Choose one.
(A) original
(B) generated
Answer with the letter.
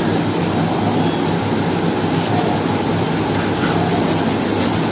A